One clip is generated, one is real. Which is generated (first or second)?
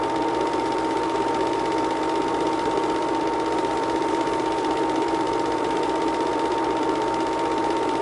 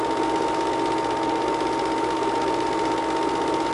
first